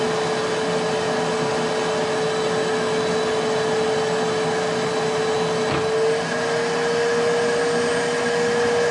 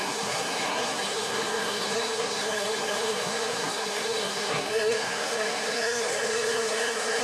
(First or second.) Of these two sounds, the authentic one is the first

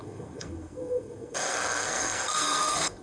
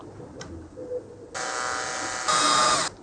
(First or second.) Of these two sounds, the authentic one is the second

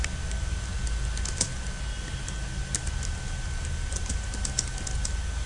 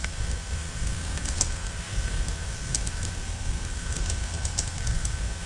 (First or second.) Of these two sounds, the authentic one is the first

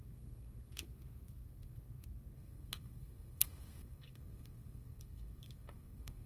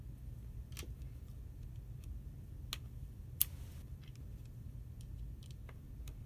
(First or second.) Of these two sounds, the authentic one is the second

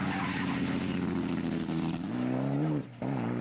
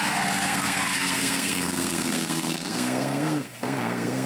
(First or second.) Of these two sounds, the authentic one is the first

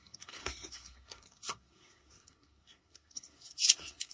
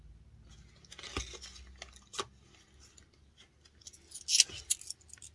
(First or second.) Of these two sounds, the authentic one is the second